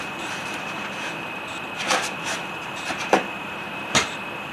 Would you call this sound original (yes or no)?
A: no